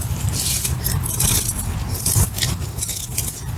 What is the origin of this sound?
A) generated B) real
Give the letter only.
B